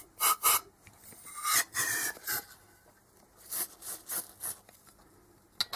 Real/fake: real